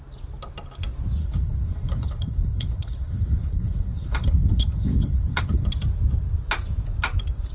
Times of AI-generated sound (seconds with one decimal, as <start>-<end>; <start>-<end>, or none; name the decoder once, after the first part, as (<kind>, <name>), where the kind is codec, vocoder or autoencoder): 1.2-5.7 (codec, HILCodec)